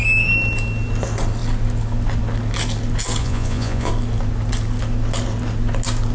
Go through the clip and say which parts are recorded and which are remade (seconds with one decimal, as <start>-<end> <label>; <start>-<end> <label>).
0.0-3.2 recorded; 3.2-3.9 remade; 3.9-6.1 recorded